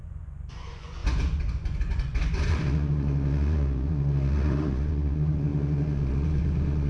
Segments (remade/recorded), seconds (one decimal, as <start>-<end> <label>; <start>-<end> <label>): 0.0-6.9 remade